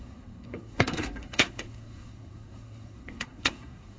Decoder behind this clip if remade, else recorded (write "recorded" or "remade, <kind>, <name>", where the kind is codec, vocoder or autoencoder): remade, codec, SNAC